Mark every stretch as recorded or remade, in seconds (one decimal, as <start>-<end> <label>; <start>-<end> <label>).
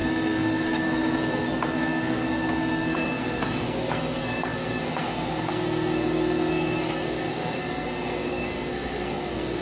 0.0-9.6 remade